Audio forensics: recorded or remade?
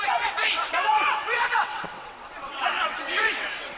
remade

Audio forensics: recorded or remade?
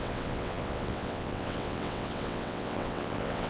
remade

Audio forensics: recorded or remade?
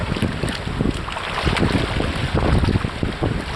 recorded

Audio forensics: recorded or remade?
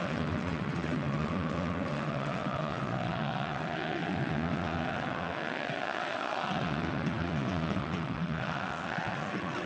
remade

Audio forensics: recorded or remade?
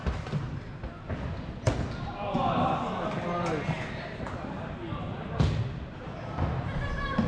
recorded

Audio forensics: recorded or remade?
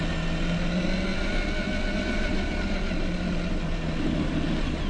recorded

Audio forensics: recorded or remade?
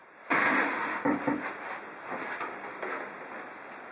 recorded